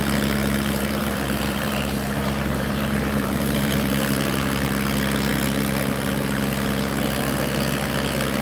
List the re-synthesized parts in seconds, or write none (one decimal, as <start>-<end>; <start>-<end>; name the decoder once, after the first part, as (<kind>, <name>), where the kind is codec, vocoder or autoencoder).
0.4-4.7 (vocoder, BigVGAN v2)